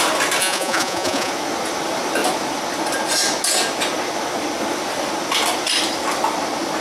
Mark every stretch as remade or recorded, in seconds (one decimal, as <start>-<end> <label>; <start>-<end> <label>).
0.0-0.4 recorded; 0.4-1.3 remade; 1.3-6.8 recorded

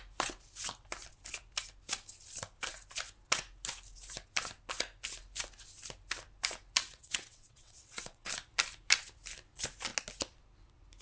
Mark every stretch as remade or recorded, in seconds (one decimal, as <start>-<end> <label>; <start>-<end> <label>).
0.0-6.8 recorded; 6.8-8.3 remade; 8.3-11.0 recorded